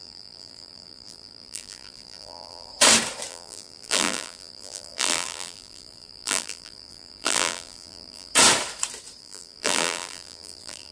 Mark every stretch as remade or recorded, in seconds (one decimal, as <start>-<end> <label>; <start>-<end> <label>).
0.0-2.7 remade; 2.7-3.3 recorded; 3.3-8.3 remade; 8.3-9.2 recorded; 9.2-10.9 remade